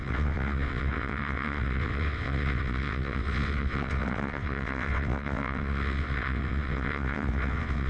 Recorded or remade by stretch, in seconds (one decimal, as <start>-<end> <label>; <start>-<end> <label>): 0.0-7.9 remade